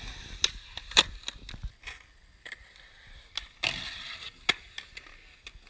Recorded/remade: recorded